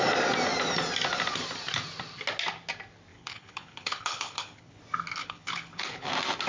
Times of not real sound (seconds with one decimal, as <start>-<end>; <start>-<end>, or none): 3.1-4.8; 5.2-6.1